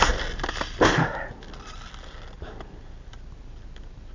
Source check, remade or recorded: recorded